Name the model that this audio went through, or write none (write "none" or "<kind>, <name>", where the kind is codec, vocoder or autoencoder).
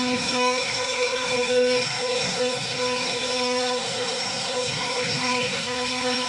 codec, SNAC